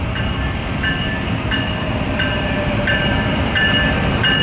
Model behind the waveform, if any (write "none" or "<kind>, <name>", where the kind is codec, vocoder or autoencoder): none